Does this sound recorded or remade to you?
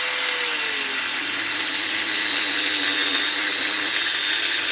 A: recorded